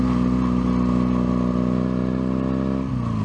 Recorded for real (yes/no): yes